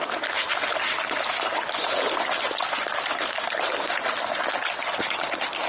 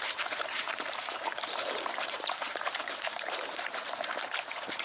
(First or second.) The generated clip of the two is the second